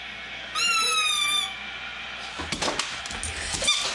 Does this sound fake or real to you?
real